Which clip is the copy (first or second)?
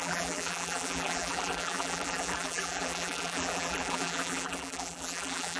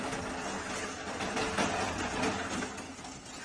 first